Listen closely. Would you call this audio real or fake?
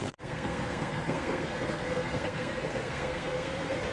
fake